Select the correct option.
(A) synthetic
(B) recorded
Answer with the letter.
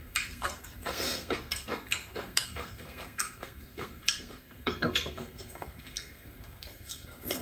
A